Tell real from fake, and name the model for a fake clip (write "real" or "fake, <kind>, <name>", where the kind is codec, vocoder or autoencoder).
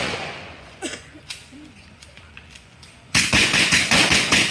fake, vocoder, Vocos